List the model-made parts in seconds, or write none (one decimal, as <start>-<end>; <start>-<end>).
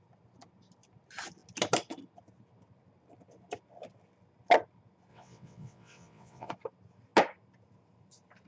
5.1-6.5